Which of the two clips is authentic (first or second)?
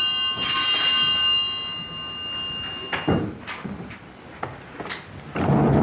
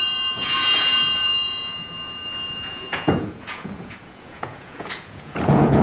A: first